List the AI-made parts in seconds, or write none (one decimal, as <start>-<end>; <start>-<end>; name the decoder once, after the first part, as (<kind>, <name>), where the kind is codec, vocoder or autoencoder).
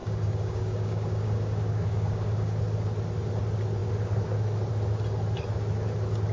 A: 0.0-2.6 (codec, DAC)